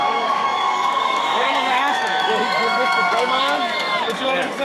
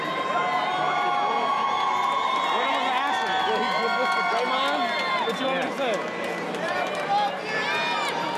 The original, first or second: second